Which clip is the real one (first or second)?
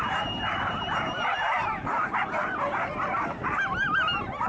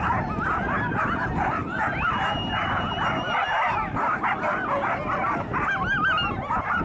second